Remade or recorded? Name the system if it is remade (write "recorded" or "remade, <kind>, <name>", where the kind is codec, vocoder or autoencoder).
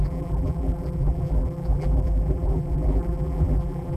remade, vocoder, BigVGAN v2